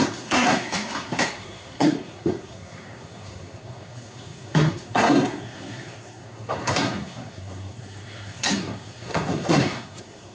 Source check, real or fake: fake